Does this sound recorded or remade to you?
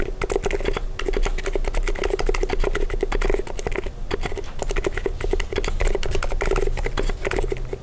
recorded